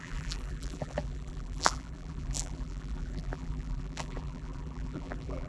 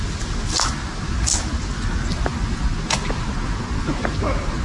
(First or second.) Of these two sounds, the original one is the second